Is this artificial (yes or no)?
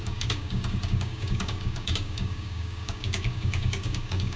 yes